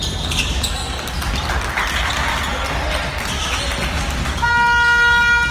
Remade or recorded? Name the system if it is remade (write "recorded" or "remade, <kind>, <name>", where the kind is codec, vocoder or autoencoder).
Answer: recorded